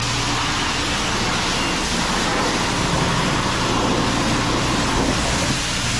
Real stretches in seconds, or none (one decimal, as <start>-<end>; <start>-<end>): 0.0-6.0